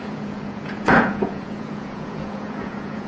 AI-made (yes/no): yes